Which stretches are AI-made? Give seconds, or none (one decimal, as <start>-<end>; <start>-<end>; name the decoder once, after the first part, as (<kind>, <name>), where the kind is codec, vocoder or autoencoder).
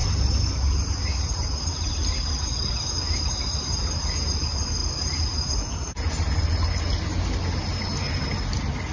none